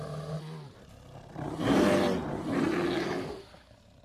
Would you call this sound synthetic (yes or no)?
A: no